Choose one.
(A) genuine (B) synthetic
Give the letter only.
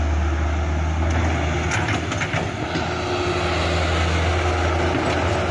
A